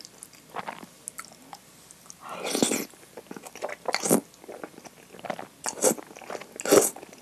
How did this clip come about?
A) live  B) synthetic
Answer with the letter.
A